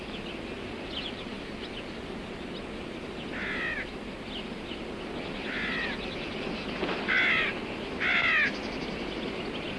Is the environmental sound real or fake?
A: real